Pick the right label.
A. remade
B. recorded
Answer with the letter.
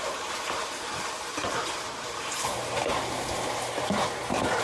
A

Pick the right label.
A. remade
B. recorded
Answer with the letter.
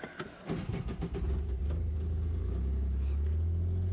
B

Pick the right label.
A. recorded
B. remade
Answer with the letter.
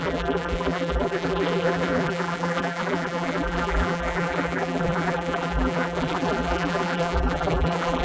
B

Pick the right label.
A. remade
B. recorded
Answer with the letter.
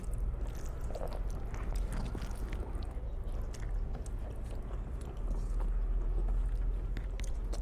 B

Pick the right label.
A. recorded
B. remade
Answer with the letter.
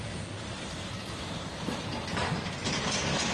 B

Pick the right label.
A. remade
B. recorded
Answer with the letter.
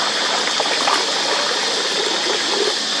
B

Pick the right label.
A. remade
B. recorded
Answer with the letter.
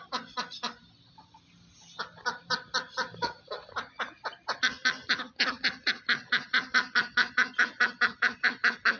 B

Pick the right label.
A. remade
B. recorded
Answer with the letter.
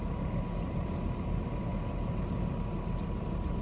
A